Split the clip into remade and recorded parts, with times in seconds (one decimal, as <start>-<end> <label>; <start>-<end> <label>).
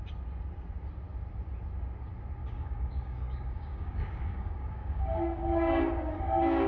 0.0-2.4 recorded; 2.4-6.7 remade